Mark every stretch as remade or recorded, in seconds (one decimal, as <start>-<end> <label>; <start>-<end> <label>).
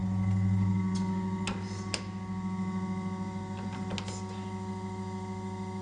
0.0-5.8 recorded